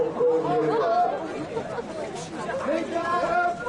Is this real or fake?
real